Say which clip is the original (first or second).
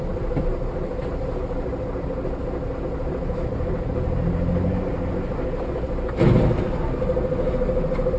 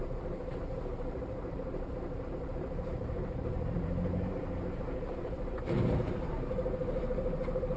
first